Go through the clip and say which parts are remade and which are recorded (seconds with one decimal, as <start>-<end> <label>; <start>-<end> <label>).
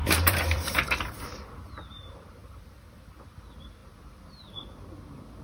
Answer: 0.0-1.7 remade; 1.7-2.4 recorded; 2.4-3.2 remade; 3.2-5.4 recorded